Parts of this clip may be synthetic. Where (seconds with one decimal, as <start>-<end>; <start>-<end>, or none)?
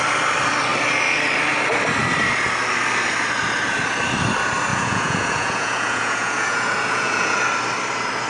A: 4.7-7.4